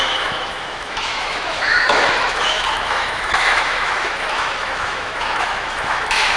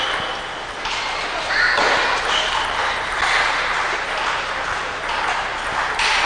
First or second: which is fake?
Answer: first